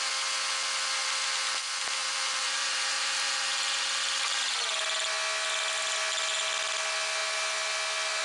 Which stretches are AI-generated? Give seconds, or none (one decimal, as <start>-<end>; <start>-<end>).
2.0-4.4